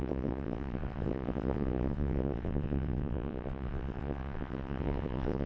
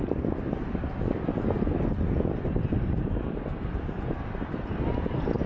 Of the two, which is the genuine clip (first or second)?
second